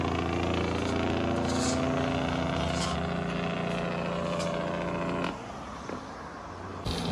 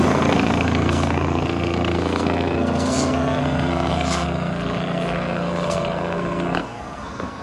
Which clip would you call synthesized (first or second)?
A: second